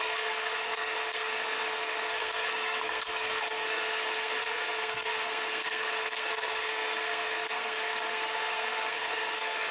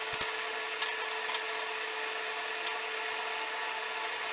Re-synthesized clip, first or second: first